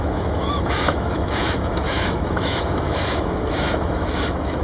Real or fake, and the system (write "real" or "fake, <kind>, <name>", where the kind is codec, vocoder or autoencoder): fake, autoencoder, DAC-VAE